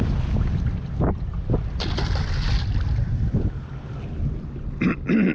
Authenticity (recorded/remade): recorded